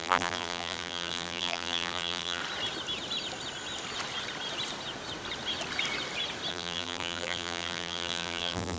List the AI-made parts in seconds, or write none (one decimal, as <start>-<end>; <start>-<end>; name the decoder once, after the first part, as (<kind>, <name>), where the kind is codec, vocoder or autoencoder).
0.0-2.4 (vocoder, BigVGAN v2); 6.5-8.8

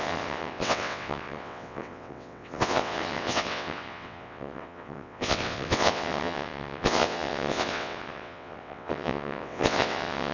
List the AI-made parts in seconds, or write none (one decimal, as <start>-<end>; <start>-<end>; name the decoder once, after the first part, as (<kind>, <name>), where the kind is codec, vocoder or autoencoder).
0.0-10.3 (vocoder, WaveNeXt)

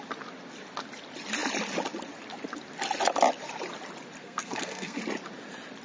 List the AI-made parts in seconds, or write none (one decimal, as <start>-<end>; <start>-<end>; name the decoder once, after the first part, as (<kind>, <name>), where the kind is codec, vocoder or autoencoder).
4.2-5.0 (codec, SNAC)

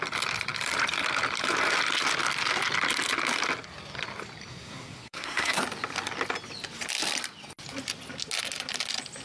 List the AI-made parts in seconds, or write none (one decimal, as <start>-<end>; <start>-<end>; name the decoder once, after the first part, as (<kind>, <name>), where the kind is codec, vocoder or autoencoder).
4.5-5.6 (codec, SNAC)